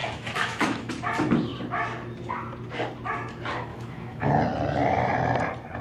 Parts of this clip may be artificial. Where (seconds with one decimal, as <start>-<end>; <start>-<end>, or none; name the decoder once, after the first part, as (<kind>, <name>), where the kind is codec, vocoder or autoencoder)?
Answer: 0.0-0.9 (autoencoder, DAC-VAE); 3.7-4.3